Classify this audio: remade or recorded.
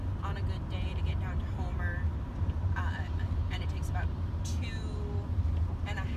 recorded